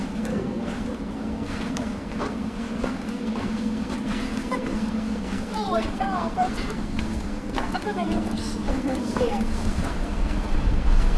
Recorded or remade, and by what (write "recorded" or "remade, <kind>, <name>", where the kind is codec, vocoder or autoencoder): remade, codec, SNAC